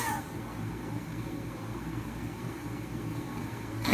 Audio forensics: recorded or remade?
remade